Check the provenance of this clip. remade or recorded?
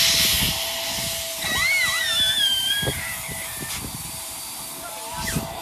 recorded